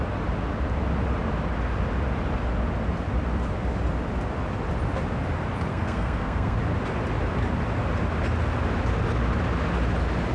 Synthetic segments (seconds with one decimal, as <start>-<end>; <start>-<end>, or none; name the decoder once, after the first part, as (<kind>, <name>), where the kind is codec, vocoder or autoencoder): 5.7-6.6 (codec, SNAC)